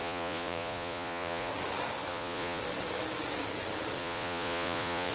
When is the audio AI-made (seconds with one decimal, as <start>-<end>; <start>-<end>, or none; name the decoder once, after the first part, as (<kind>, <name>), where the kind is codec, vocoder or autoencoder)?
0.0-1.5 (vocoder, Vocos); 2.1-2.6; 4.0-5.1